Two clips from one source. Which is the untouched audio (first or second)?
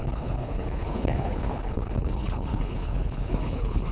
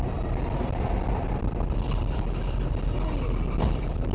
second